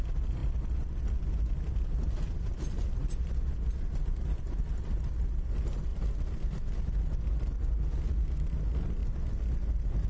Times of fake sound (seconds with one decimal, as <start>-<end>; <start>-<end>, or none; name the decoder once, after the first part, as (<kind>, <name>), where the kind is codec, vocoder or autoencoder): none